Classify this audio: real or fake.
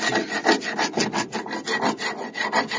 real